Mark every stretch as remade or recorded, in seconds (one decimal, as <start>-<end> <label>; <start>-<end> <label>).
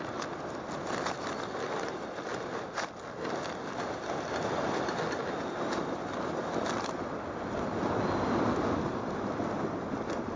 0.0-10.4 recorded